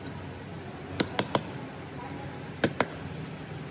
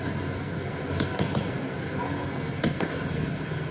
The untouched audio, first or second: first